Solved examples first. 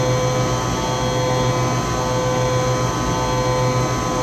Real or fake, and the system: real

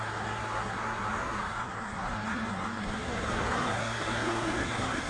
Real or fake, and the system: fake, codec, SNAC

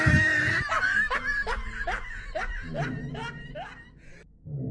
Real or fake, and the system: real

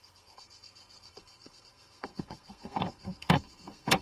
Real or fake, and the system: fake, codec, SNAC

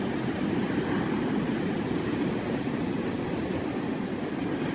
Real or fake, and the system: real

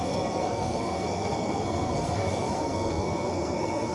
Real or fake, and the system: fake, codec, SNAC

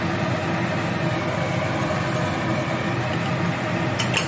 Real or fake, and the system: real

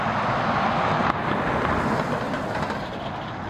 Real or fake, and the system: real